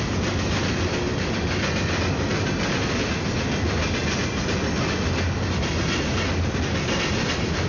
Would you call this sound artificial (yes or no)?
no